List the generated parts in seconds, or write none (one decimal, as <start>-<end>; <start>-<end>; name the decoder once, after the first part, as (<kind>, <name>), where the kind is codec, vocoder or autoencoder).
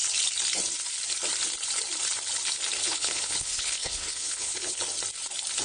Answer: 2.8-4.8 (codec, HILCodec)